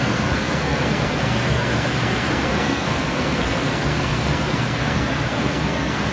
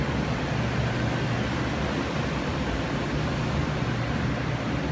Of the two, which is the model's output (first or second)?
first